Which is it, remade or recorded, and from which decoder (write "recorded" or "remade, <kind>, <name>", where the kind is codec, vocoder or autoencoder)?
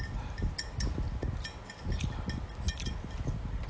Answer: recorded